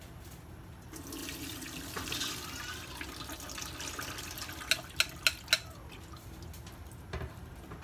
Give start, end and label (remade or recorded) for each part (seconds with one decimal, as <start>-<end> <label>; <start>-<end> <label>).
0.0-7.8 recorded